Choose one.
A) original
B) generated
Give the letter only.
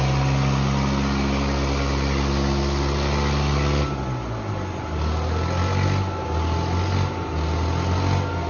A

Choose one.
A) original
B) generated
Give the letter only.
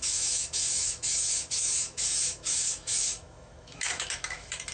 B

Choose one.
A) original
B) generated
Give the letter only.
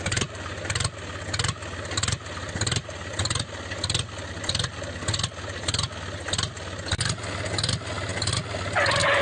A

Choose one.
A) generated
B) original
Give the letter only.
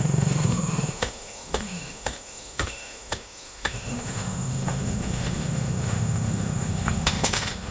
A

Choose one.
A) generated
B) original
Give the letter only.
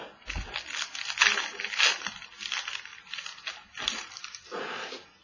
B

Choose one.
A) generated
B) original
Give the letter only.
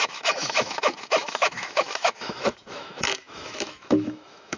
A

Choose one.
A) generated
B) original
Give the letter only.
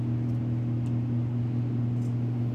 B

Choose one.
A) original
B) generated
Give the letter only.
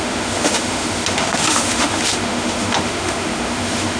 B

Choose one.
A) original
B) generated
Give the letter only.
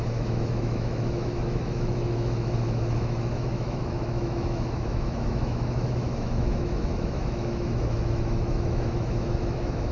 B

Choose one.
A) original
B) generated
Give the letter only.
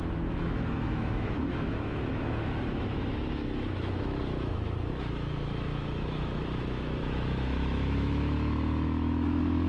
B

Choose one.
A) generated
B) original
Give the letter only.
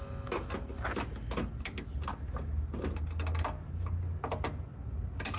B